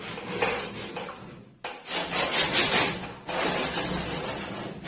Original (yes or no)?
yes